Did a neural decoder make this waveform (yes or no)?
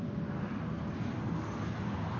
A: no